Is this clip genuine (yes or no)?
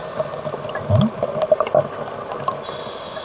yes